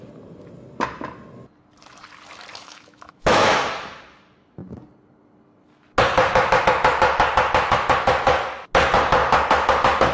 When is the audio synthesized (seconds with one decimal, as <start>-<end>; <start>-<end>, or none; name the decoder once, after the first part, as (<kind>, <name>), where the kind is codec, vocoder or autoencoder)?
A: 2.5-3.5 (autoencoder, DAC-VAE)